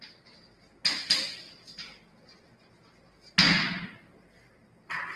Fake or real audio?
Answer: real